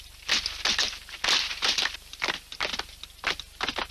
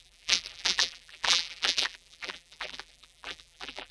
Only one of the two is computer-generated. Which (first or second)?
second